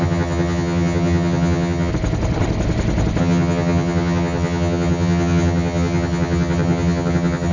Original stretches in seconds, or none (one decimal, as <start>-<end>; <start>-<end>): 1.9-3.2